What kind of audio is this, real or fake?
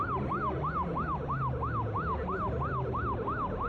real